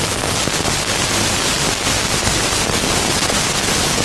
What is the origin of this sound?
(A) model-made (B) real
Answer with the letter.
B